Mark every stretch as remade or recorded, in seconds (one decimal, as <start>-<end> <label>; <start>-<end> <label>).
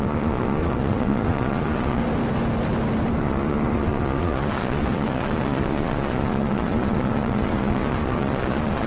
0.0-2.0 remade; 2.0-3.2 recorded; 3.2-8.9 remade